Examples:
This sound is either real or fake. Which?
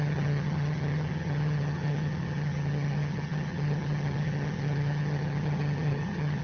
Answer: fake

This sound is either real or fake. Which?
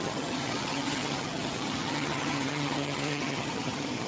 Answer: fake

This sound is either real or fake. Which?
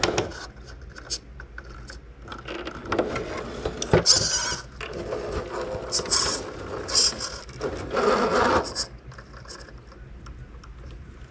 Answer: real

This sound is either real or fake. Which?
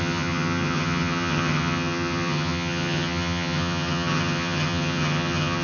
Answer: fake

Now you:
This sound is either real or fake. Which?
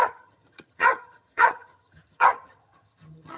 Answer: fake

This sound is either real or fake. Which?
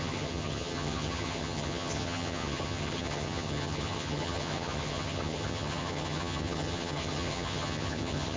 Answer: fake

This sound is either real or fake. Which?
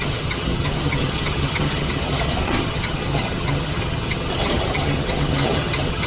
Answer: fake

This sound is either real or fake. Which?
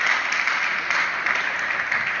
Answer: real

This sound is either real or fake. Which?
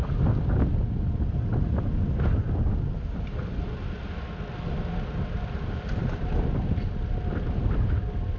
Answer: real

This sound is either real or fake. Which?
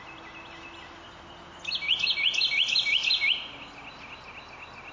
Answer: real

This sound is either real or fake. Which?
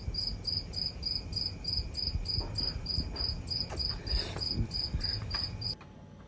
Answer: real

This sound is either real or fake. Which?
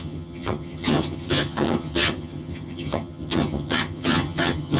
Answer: fake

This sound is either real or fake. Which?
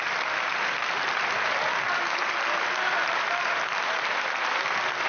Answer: real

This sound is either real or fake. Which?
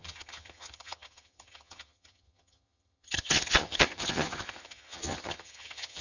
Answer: fake